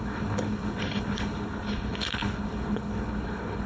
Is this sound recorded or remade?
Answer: remade